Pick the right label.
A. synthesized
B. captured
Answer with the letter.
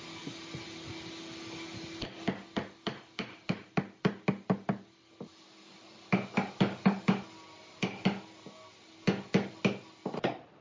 B